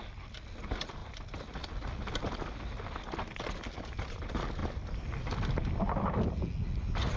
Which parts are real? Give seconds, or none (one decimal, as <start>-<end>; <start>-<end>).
0.0-7.2